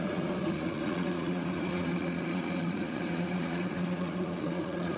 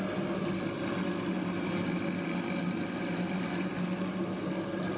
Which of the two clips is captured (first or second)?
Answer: second